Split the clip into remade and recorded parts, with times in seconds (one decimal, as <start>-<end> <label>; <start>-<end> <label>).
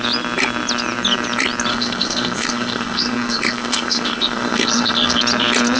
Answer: 0.0-1.7 recorded; 1.7-5.2 remade; 5.2-5.8 recorded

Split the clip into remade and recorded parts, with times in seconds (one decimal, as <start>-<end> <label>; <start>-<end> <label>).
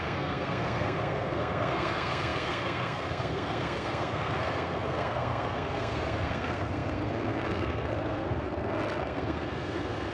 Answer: 0.0-10.1 remade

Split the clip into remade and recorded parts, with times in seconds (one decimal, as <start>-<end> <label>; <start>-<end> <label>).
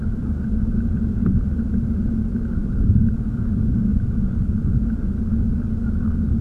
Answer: 0.0-6.4 recorded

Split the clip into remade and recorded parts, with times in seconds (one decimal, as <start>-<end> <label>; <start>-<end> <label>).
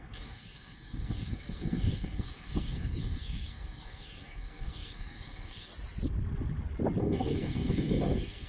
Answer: 0.0-5.7 remade; 5.7-7.0 recorded; 7.0-8.5 remade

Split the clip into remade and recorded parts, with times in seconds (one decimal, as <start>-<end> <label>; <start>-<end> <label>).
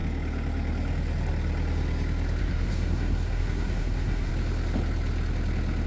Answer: 0.0-2.4 recorded; 2.4-4.3 remade; 4.3-5.9 recorded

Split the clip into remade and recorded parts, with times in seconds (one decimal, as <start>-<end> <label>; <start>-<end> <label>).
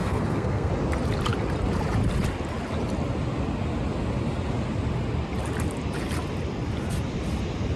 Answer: 0.0-0.7 remade; 0.7-7.8 recorded